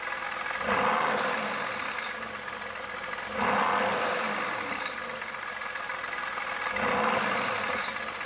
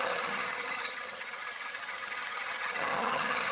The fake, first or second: second